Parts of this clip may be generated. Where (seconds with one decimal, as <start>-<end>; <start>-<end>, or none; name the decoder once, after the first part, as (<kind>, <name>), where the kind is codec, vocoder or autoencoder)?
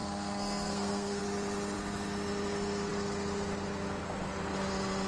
0.0-1.2 (codec, SNAC)